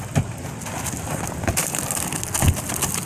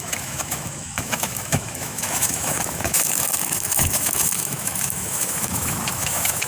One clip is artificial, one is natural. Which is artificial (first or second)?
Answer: second